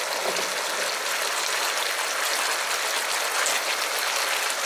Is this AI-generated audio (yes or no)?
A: no